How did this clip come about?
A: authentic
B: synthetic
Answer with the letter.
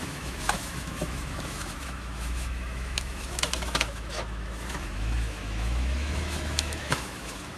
B